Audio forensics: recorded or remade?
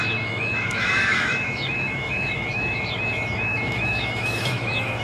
remade